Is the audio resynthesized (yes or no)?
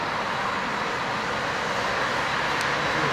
no